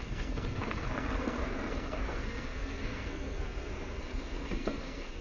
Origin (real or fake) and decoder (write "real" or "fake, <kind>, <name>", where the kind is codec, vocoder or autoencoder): fake, codec, SNAC